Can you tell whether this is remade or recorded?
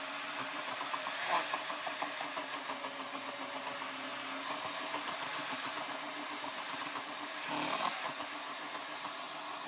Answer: recorded